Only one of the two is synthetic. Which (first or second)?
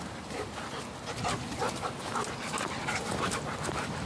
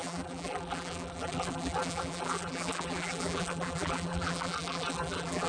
second